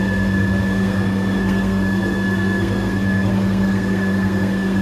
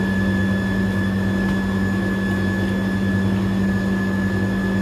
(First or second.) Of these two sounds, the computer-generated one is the first